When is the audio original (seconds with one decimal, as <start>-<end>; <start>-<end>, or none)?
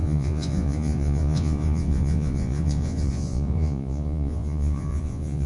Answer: none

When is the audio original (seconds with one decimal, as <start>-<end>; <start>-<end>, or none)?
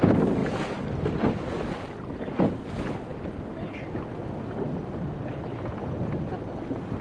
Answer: 0.0-7.0